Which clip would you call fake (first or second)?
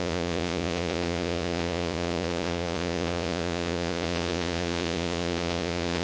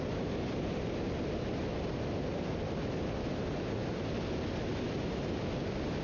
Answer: first